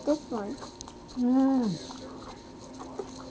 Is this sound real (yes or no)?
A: yes